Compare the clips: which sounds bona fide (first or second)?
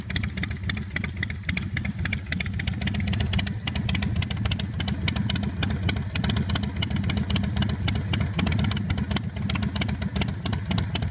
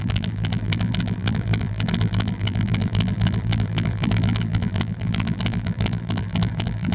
first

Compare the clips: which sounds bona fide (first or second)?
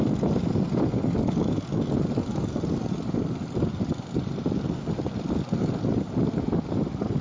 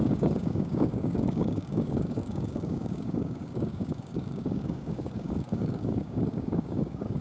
first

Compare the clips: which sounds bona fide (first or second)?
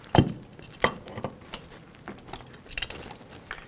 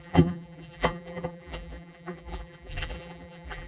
first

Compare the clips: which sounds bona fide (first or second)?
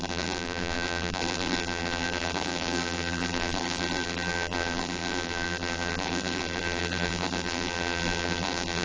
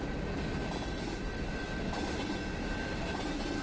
second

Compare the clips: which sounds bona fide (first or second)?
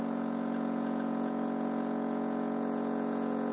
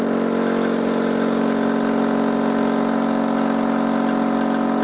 second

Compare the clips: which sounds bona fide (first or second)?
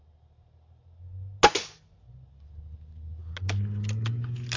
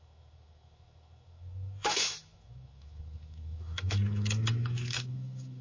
first